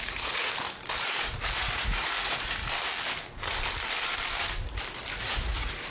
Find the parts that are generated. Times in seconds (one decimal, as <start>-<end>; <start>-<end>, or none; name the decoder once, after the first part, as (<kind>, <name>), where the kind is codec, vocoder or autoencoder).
0.0-0.5 (vocoder, Vocos); 1.0-2.6; 5.1-5.9